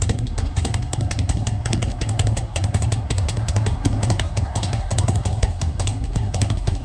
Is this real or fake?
fake